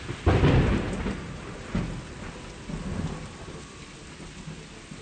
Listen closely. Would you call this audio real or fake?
real